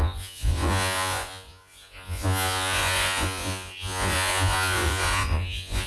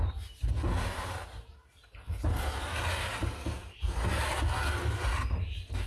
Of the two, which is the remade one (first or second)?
first